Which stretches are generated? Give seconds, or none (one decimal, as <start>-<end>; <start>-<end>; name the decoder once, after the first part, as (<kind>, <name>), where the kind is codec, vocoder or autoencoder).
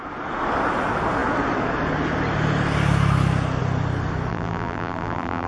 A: 4.3-5.5 (vocoder, BigVGAN v2)